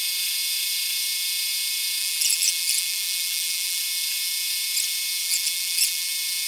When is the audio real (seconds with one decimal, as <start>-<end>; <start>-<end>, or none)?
0.0-2.0; 3.8-5.2; 6.1-6.5